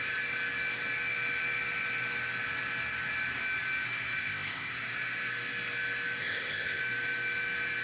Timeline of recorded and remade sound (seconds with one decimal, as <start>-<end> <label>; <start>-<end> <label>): 0.0-4.2 recorded; 4.2-4.7 remade; 4.7-6.2 recorded; 6.2-6.8 remade; 6.8-7.8 recorded